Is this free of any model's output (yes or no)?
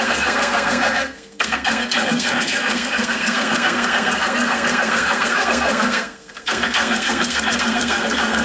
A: no